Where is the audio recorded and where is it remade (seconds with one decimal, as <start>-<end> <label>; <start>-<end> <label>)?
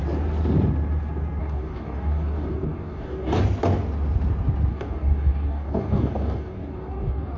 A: 0.0-1.4 recorded; 1.4-3.4 remade; 3.4-4.7 recorded; 4.7-7.4 remade